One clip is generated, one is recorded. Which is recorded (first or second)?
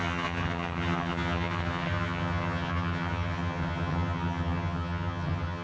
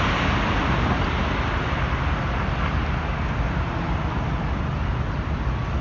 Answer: second